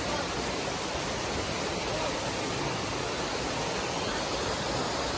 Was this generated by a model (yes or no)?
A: no